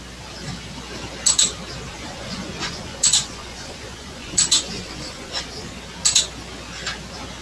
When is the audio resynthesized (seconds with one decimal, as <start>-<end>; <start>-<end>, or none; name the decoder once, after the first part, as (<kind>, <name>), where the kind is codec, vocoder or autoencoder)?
1.9-5.7 (vocoder, Vocos)